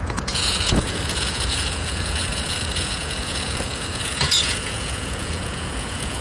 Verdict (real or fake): fake